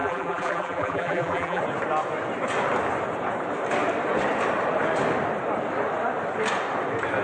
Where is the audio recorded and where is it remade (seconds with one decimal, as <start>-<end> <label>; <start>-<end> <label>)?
0.0-1.6 remade; 1.6-7.2 recorded